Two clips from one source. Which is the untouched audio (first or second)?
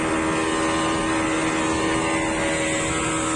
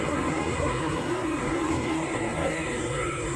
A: first